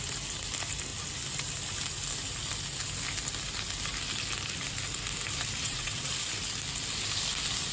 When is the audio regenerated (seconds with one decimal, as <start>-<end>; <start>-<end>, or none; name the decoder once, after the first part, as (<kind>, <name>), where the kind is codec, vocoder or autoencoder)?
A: 5.6-6.1 (vocoder, WaveNeXt)